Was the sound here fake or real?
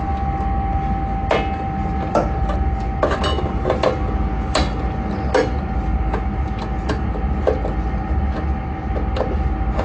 real